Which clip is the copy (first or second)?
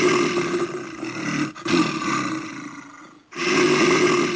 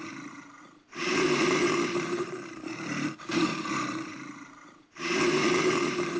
second